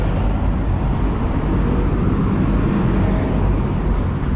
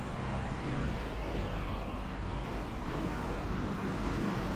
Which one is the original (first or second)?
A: first